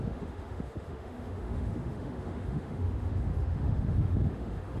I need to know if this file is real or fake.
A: fake